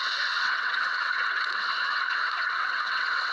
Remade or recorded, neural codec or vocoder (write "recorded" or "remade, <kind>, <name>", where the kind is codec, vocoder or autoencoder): remade, vocoder, WaveNeXt